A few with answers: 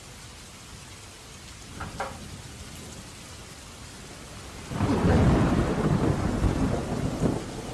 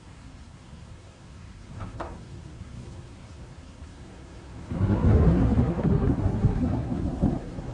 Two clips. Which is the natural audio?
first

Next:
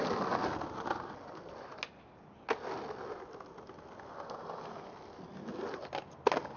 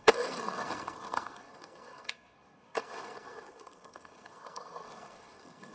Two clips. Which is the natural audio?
first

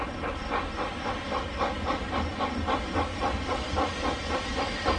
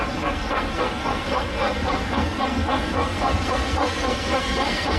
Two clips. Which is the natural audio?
first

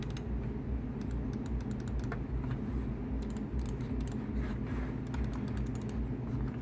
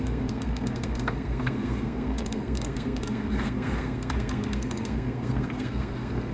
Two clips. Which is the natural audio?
first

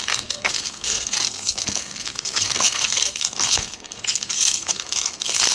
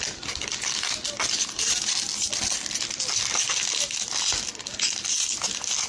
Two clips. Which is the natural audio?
second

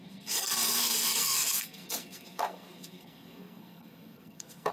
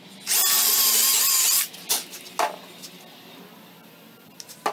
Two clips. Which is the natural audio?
second